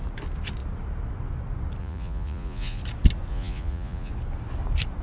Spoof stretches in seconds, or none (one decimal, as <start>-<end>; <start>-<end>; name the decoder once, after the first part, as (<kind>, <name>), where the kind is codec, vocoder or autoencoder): 1.8-2.8 (vocoder, Vocos); 3.3-4.1